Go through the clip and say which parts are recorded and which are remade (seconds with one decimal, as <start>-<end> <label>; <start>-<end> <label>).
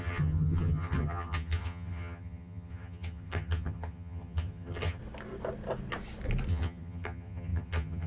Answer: 0.0-5.0 remade; 5.0-6.5 recorded; 6.5-8.1 remade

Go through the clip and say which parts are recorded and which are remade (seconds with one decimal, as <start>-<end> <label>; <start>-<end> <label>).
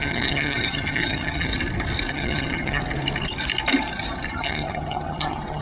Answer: 0.0-1.5 remade; 1.5-2.1 recorded; 2.1-2.8 remade; 2.8-4.3 recorded; 4.3-5.6 remade